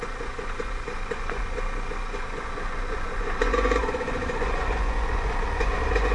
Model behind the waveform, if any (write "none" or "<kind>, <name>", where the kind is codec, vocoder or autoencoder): vocoder, Vocos